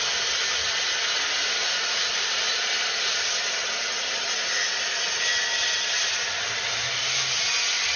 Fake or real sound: real